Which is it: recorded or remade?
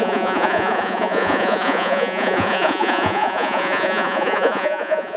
remade